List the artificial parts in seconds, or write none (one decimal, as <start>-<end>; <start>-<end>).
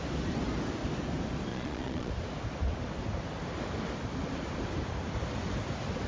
1.5-2.1